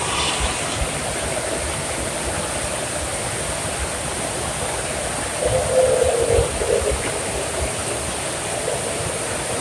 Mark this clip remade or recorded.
recorded